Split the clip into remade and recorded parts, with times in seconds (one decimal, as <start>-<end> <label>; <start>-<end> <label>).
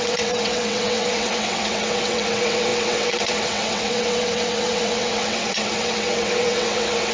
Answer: 0.0-7.1 remade